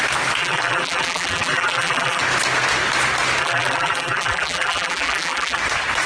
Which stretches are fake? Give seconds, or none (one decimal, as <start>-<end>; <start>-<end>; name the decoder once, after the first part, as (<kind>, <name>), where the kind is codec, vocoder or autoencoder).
0.4-2.2 (vocoder, BigVGAN v2); 3.4-5.6